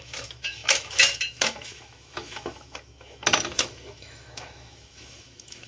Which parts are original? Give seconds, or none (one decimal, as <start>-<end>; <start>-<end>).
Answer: none